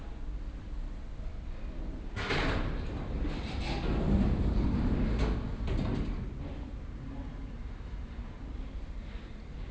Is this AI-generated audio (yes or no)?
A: no